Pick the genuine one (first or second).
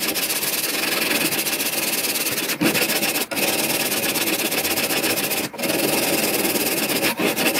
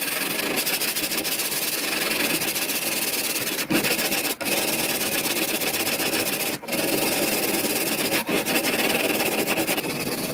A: first